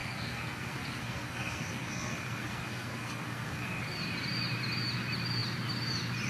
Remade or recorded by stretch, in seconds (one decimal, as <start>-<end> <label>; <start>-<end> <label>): 0.0-3.8 remade; 3.8-6.3 recorded